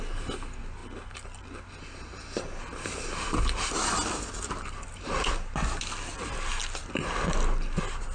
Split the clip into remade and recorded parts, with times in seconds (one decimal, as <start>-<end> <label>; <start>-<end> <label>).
0.0-8.1 recorded